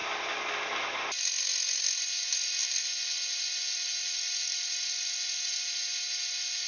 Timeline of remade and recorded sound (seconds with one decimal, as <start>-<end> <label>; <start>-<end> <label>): 0.0-6.7 recorded